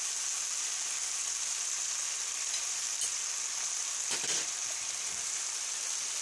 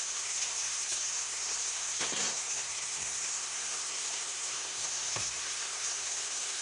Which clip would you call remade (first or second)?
second